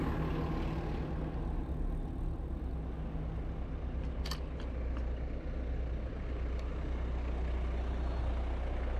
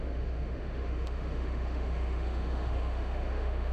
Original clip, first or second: first